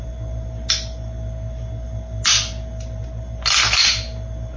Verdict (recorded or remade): recorded